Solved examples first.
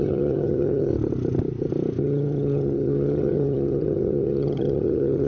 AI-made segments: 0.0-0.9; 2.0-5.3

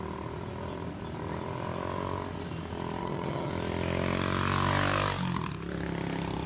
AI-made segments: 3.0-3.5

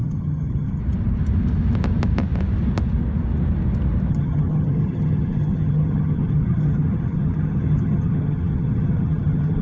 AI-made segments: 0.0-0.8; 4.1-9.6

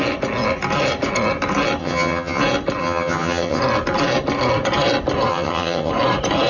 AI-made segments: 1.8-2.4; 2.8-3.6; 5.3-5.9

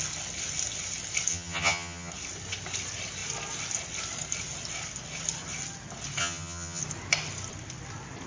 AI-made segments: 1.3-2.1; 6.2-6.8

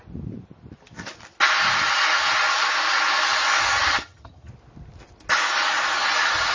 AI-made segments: 3.6-4.5